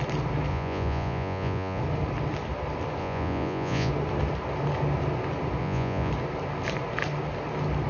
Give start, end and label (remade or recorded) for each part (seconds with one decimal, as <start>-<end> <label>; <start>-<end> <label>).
0.0-0.5 recorded; 0.5-1.8 remade; 1.8-3.0 recorded; 3.0-3.9 remade; 3.9-5.6 recorded; 5.6-6.1 remade; 6.1-7.9 recorded